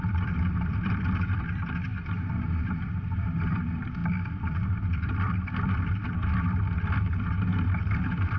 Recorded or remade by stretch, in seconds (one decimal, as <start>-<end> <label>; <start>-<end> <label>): 0.0-1.9 remade; 1.9-2.6 recorded; 2.6-8.4 remade